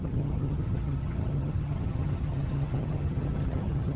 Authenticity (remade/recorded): remade